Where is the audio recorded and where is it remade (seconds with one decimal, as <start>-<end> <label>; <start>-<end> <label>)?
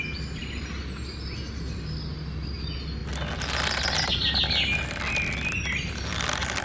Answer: 0.0-6.6 recorded